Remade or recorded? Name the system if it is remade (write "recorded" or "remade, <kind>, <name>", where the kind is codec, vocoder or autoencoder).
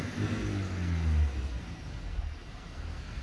remade, codec, SNAC